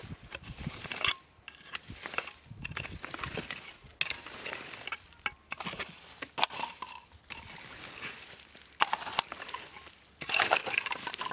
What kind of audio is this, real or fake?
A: real